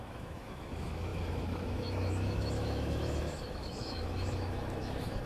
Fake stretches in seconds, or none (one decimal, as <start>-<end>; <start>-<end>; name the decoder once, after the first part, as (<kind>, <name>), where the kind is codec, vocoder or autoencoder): 0.0-5.3 (autoencoder, DAC-VAE)